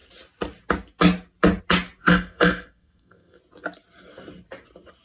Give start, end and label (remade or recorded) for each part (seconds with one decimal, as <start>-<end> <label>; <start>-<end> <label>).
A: 0.0-2.0 recorded; 2.0-3.4 remade; 3.4-5.0 recorded